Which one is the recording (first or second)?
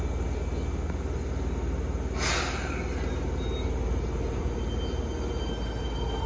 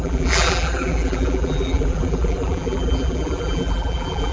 first